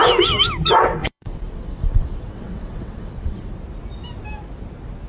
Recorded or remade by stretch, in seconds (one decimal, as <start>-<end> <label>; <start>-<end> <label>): 0.0-1.0 recorded; 1.0-3.5 remade; 3.5-5.1 recorded